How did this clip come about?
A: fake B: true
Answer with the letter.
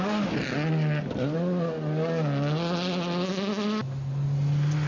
B